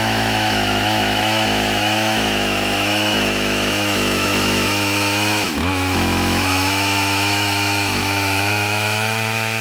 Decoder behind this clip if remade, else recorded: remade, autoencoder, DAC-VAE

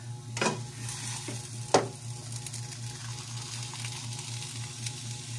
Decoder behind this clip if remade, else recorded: recorded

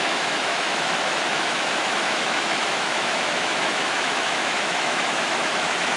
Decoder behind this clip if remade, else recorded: remade, autoencoder, DAC-VAE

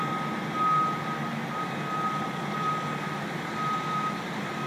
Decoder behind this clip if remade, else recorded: recorded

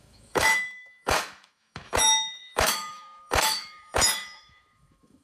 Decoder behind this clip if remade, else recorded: remade, autoencoder, DAC-VAE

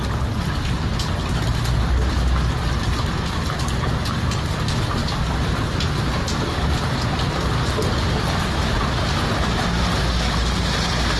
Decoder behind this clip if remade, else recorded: recorded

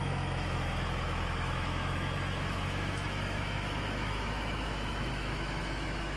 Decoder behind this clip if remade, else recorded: remade, autoencoder, DAC-VAE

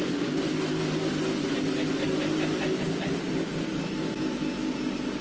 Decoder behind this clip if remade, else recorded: recorded